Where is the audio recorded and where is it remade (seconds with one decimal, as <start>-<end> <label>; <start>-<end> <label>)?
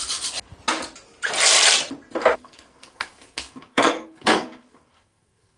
0.0-2.2 recorded; 2.2-5.6 remade